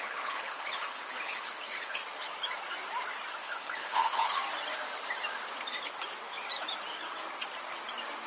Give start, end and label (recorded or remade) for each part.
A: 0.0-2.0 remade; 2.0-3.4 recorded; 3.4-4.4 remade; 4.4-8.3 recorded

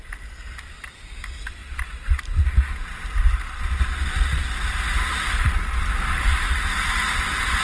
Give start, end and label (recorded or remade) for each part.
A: 0.0-7.6 recorded